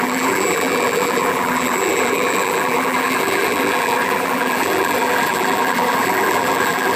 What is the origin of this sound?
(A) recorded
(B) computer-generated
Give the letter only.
B